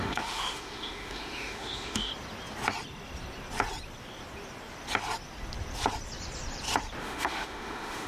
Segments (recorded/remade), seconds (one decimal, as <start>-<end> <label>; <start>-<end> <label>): 0.0-2.1 remade; 2.1-7.0 recorded; 7.0-8.1 remade